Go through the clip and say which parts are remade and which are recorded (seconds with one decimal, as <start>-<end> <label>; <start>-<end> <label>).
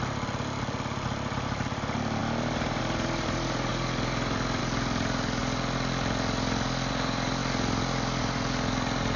0.0-5.4 remade; 5.4-6.9 recorded; 6.9-7.4 remade; 7.4-8.2 recorded; 8.2-9.2 remade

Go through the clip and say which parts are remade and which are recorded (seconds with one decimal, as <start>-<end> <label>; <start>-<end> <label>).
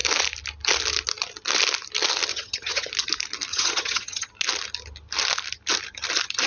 0.0-2.3 recorded; 2.3-2.9 remade; 2.9-3.5 recorded; 3.5-4.3 remade; 4.3-6.5 recorded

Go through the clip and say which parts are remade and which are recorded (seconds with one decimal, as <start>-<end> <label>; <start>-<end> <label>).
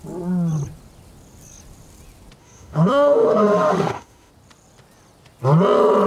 0.0-2.4 recorded; 2.4-4.3 remade; 4.3-6.1 recorded